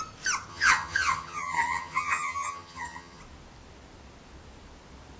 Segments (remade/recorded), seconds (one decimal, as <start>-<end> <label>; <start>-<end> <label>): 0.0-0.5 recorded; 0.5-3.2 remade; 3.2-5.2 recorded